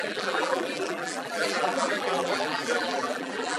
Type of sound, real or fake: fake